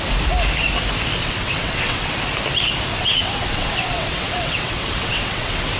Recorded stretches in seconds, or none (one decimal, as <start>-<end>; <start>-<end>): 0.0-1.2; 2.1-2.9